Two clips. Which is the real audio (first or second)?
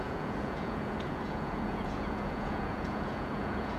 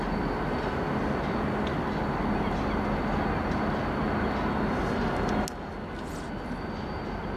second